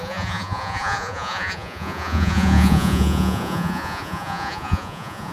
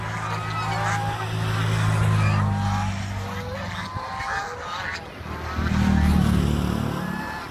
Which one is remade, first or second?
first